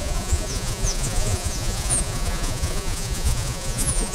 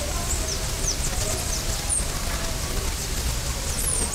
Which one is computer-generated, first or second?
first